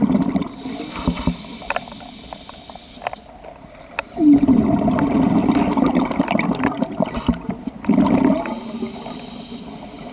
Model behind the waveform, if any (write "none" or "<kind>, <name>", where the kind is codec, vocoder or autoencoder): none